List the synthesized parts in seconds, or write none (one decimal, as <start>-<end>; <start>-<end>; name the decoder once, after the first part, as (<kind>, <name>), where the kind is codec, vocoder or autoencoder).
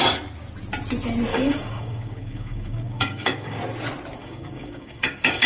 1.3-3.6 (codec, DAC); 4.2-5.5